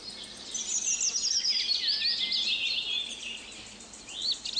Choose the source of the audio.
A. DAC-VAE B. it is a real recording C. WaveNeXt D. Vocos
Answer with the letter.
B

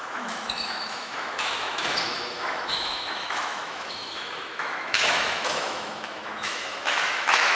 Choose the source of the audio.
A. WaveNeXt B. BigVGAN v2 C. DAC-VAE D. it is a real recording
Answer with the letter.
C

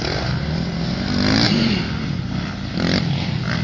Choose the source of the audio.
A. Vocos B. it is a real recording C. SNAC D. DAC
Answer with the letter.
B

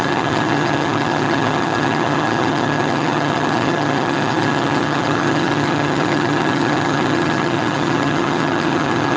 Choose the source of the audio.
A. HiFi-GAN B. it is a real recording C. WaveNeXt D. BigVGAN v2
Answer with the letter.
A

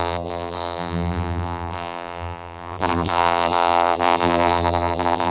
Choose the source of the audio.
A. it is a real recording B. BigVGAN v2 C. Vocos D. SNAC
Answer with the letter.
B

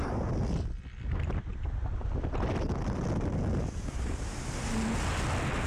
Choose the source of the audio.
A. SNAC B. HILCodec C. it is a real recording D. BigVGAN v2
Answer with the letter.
C